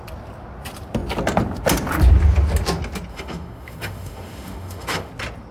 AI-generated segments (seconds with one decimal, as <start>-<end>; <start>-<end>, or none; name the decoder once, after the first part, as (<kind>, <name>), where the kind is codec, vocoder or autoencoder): 3.1-5.1 (autoencoder, DAC-VAE)